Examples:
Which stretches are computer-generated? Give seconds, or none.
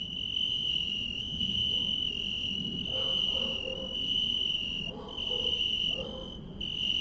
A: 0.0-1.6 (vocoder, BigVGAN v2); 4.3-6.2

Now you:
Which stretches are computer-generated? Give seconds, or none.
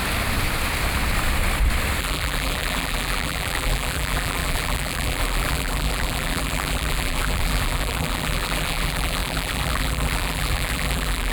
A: 2.0-11.3 (vocoder, BigVGAN v2)